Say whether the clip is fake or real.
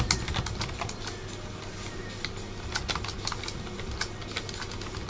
real